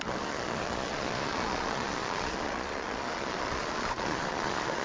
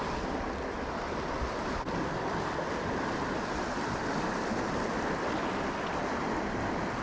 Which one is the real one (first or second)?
second